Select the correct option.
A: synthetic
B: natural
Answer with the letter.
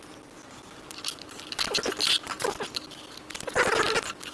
B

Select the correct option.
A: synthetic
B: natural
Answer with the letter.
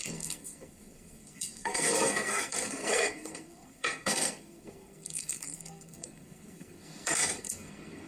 A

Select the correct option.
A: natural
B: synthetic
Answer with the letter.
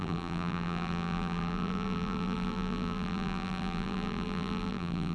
B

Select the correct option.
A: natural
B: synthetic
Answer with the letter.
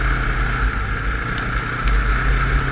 A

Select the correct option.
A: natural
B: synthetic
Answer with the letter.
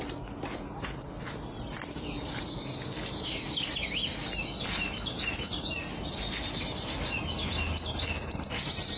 A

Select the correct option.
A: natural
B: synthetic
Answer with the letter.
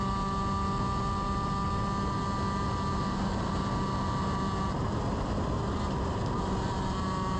A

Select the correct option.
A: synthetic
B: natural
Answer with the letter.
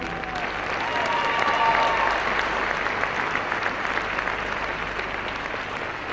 B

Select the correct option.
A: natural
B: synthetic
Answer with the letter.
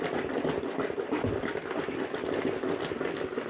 A